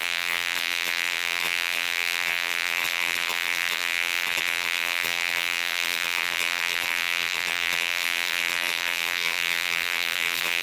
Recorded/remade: remade